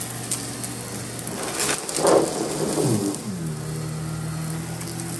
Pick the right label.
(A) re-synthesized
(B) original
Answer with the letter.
B